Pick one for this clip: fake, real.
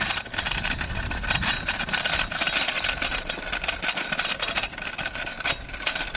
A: real